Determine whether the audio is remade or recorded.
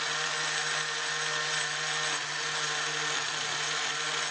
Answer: recorded